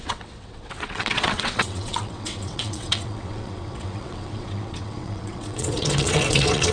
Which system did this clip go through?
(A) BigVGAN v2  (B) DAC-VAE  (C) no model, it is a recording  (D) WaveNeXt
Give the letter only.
D